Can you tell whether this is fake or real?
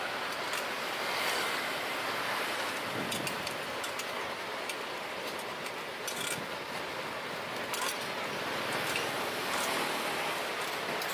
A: real